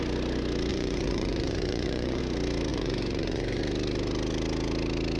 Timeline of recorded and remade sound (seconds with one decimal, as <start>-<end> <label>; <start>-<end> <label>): 0.0-0.7 recorded; 0.7-2.2 remade; 2.2-2.7 recorded; 2.7-3.6 remade; 3.6-5.2 recorded